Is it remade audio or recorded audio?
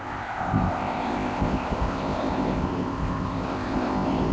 remade